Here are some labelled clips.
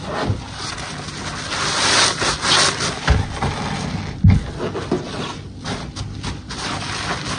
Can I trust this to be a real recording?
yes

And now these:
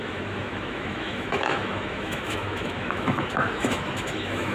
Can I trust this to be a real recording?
no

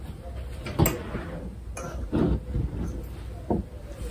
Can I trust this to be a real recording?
yes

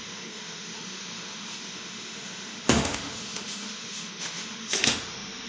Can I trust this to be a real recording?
no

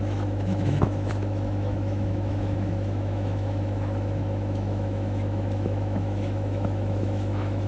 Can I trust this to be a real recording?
no